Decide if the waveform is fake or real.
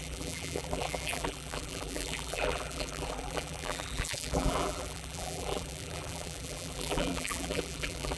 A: fake